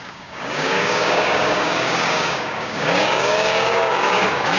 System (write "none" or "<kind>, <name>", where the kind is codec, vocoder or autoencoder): codec, DAC